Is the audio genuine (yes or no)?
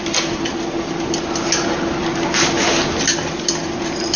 yes